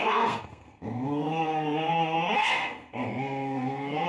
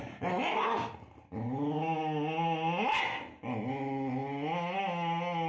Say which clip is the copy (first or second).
first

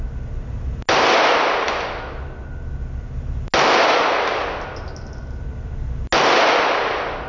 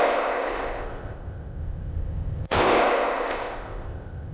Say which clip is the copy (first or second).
second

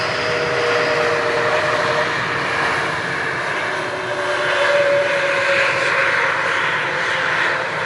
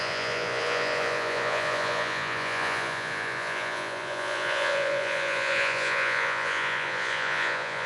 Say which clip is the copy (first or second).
second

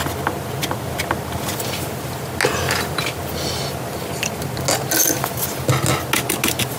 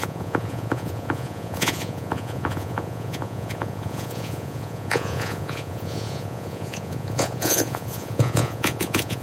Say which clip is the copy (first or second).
second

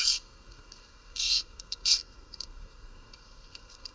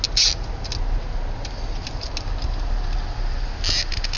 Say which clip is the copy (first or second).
first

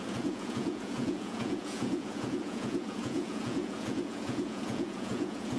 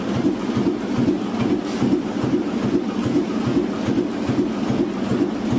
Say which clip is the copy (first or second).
first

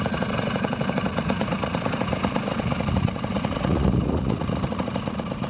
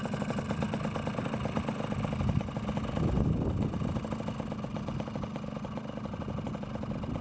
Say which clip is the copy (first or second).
first